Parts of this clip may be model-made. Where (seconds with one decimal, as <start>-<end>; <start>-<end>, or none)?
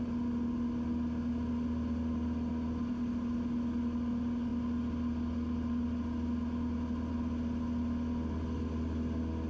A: none